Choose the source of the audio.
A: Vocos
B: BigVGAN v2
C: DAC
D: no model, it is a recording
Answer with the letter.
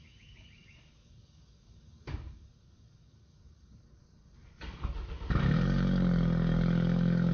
C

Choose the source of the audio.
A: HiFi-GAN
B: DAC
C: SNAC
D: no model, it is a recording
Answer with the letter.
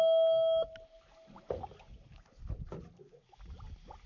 D